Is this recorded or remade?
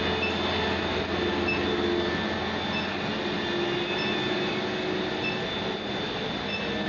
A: recorded